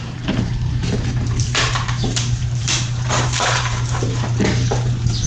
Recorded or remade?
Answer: remade